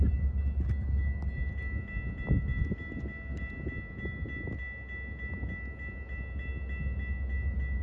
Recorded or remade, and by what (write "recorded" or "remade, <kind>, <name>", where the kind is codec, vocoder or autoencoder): recorded